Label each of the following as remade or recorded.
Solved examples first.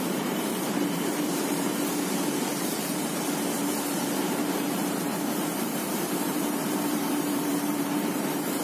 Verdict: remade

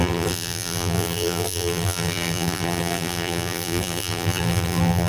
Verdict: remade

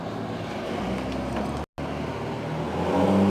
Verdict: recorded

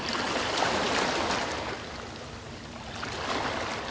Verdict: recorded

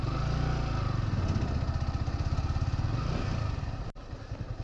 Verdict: recorded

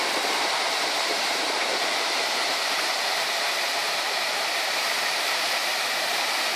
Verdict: remade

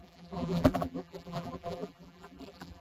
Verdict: remade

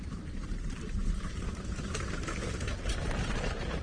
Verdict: remade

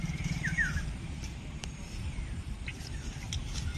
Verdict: remade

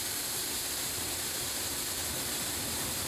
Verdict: remade